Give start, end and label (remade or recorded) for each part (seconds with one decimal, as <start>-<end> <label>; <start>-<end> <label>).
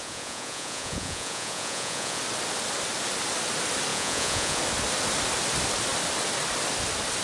0.0-2.2 remade; 2.2-3.9 recorded; 3.9-4.6 remade; 4.6-7.2 recorded